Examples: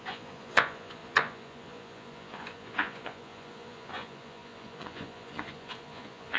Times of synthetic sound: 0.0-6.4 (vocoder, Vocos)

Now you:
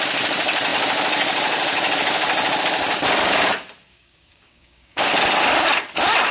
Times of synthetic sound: 3.9-5.1 (codec, DAC)